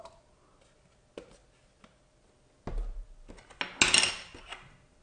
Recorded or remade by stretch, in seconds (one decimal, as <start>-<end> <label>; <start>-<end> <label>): 0.0-5.0 recorded